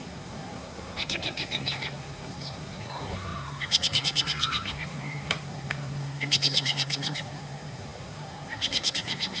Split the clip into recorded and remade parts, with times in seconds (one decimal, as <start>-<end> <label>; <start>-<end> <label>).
0.0-9.4 remade